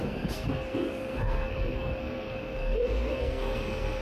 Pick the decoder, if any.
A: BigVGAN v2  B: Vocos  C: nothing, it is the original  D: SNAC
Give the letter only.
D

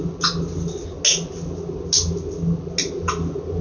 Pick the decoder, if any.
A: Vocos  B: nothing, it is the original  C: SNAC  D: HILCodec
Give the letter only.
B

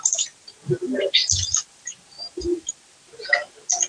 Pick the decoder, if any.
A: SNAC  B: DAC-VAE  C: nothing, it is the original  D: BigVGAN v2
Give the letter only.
C